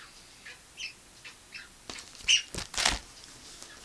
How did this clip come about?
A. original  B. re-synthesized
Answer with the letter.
A